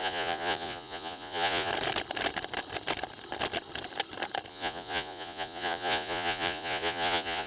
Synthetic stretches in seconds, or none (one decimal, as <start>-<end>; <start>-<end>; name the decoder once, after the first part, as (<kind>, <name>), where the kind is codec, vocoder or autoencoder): 0.0-1.7 (vocoder, Vocos); 4.5-7.5